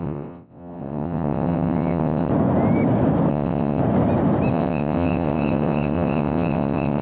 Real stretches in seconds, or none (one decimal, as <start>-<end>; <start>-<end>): 2.3-3.3; 3.8-4.5